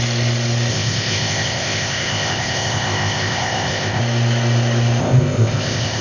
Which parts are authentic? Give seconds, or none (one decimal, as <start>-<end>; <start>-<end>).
0.0-0.7; 4.0-5.0